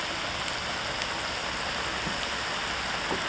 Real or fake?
real